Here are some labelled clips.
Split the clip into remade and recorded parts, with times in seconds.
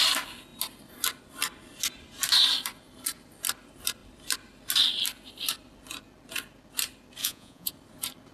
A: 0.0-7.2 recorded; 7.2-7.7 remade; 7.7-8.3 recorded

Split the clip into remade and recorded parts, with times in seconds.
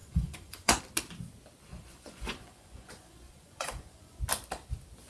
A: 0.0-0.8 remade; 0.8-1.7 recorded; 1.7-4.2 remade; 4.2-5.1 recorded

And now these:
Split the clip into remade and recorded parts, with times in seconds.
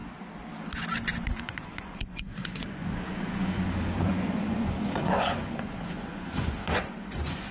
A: 0.0-1.3 recorded; 1.3-7.5 remade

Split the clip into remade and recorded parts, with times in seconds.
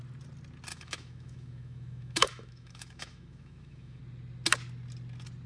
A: 0.0-0.7 recorded; 0.7-4.0 remade; 4.0-5.5 recorded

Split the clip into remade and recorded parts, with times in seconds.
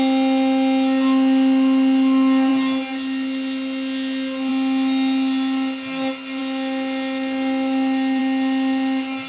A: 0.0-9.3 recorded